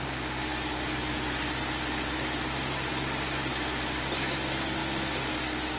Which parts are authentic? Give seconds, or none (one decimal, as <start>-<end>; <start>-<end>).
0.0-5.8